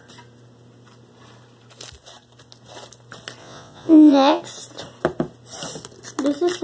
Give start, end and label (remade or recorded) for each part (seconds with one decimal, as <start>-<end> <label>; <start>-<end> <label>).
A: 0.0-3.4 recorded; 3.4-4.4 remade; 4.4-6.6 recorded